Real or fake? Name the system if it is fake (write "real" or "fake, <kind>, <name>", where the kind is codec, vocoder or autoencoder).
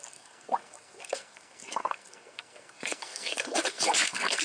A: fake, codec, SNAC